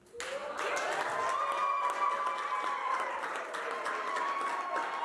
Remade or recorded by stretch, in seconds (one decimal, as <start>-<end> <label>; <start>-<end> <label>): 0.0-0.4 recorded; 0.4-0.9 remade; 0.9-1.4 recorded; 1.4-2.7 remade; 2.7-3.3 recorded; 3.3-3.9 remade; 3.9-5.0 recorded